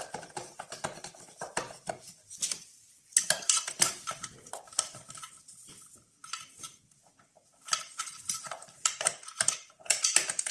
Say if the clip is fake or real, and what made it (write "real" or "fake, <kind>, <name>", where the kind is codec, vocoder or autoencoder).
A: real